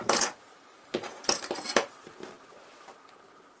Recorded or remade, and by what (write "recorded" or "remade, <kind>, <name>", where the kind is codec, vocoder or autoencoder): remade, vocoder, BigVGAN v2